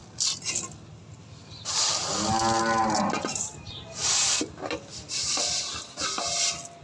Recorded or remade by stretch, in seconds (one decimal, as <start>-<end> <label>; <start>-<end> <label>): 0.0-6.8 recorded